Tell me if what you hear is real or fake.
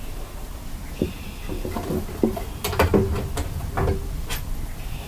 real